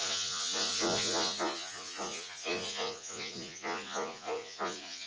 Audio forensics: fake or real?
fake